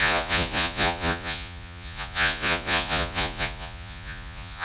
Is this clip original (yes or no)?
no